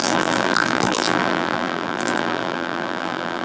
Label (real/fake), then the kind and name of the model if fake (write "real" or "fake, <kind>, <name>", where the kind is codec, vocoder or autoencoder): fake, vocoder, BigVGAN v2